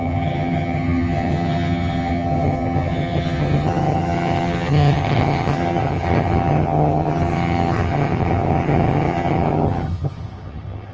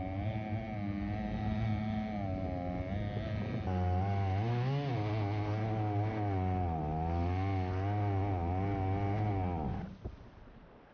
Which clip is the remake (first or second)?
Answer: first